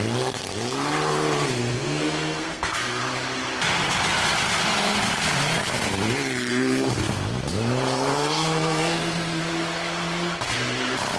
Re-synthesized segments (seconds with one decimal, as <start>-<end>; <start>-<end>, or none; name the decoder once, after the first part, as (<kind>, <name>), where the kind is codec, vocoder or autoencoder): 1.7-3.0 (codec, SNAC); 6.5-7.5; 8.1-9.4